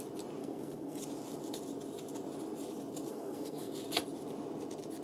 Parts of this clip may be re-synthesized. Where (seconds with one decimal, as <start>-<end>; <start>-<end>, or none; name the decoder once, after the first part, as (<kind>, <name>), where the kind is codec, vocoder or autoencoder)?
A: 0.4-1.0 (codec, SNAC); 3.1-3.7